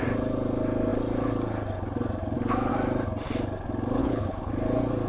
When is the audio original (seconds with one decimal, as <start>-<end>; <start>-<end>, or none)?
0.0-4.0; 4.5-5.1